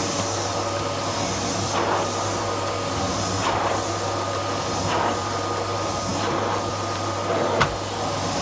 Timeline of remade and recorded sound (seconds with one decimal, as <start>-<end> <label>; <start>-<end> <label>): 0.0-8.4 recorded